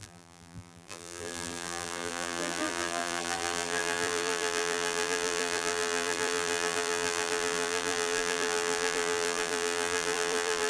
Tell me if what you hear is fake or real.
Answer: fake